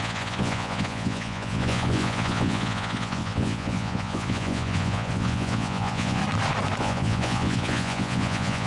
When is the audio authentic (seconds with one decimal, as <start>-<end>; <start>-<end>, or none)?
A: 6.2-6.8